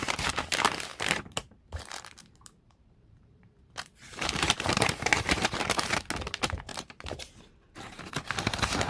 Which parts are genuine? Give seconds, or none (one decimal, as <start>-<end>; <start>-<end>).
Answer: 0.0-0.9; 6.0-6.7; 8.1-8.9